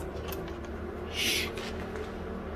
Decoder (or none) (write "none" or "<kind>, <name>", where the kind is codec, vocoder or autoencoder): none